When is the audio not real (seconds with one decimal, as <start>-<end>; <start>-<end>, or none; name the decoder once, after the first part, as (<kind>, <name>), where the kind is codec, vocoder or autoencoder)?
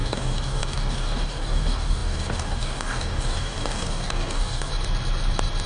0.0-4.7 (codec, DAC)